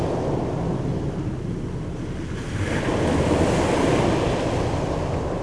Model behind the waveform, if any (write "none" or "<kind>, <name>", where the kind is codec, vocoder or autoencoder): none